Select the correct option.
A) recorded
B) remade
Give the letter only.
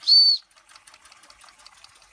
A